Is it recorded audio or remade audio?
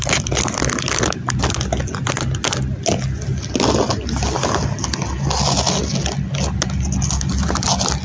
recorded